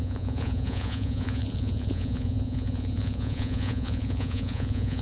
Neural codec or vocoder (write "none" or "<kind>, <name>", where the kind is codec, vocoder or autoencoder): vocoder, Vocos